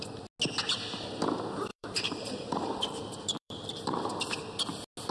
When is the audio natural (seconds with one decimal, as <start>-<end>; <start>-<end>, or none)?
0.0-1.7; 4.2-5.1